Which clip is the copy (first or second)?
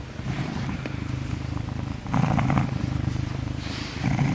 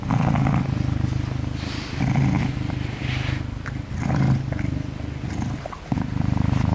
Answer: first